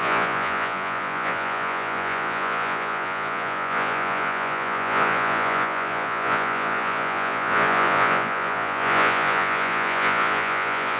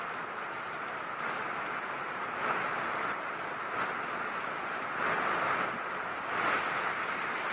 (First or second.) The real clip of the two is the second